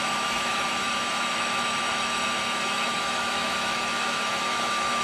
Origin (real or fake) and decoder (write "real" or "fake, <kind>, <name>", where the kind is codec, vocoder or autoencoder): fake, autoencoder, DAC-VAE